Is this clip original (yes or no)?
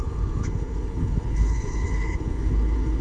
no